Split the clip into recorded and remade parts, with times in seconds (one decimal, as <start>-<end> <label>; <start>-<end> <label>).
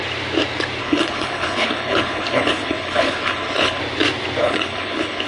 0.0-0.8 recorded; 0.8-3.8 remade; 3.8-4.4 recorded; 4.4-5.3 remade